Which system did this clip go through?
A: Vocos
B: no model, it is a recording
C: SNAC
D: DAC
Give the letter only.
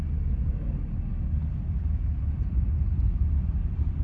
B